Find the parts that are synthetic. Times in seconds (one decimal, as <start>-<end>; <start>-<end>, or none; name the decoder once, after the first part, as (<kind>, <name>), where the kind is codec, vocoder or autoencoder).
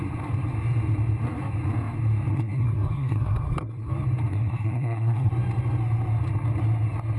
2.3-3.9 (codec, SNAC); 4.3-5.3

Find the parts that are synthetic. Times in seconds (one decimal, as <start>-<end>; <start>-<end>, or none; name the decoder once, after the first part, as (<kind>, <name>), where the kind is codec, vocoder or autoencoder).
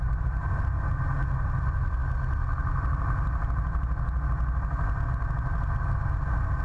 none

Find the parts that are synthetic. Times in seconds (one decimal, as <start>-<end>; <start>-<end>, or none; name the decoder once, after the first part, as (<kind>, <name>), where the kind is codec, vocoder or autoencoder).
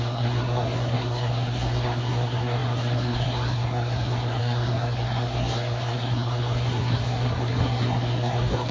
0.0-8.7 (codec, SNAC)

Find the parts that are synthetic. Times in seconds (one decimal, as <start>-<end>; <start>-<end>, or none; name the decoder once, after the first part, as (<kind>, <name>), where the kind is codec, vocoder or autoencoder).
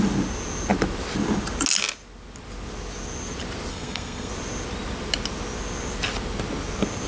3.7-4.3 (codec, SNAC)